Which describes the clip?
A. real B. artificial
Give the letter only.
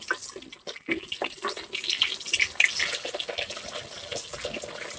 A